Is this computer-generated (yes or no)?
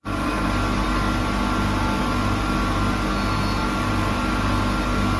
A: no